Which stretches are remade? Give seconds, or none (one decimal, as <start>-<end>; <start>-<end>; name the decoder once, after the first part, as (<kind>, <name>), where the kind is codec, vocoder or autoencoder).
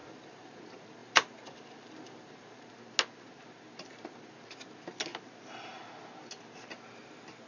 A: 0.0-0.6 (vocoder, BigVGAN v2); 1.0-2.7